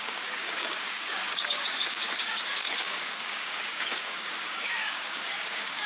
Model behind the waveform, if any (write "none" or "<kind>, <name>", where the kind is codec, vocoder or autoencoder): codec, DAC